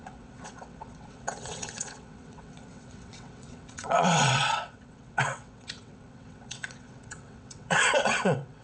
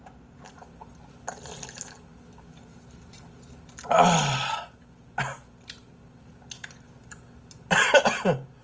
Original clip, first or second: second